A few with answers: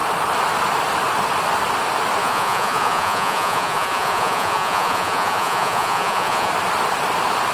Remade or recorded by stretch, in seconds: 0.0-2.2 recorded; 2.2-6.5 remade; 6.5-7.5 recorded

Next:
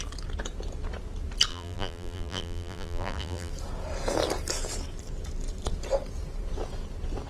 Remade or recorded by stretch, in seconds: 0.0-1.5 recorded; 1.5-3.5 remade; 3.5-7.3 recorded

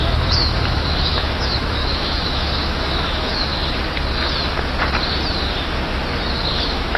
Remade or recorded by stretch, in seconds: 0.0-3.5 remade; 3.5-6.6 recorded; 6.6-7.0 remade

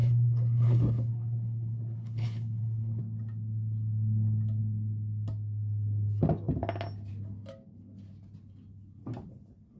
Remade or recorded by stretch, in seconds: 0.0-3.0 remade; 3.0-9.8 recorded

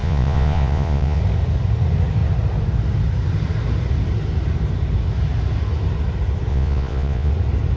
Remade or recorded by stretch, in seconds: 0.0-1.2 remade; 1.2-6.5 recorded; 6.5-7.3 remade; 7.3-7.8 recorded